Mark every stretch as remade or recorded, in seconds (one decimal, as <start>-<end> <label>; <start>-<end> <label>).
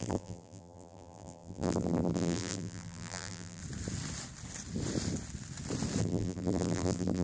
0.0-3.6 remade; 3.6-6.0 recorded; 6.0-7.2 remade